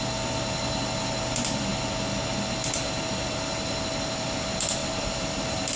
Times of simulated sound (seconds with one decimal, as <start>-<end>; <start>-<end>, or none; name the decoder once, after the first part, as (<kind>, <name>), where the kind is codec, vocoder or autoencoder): 0.0-1.7 (vocoder, BigVGAN v2); 2.3-5.8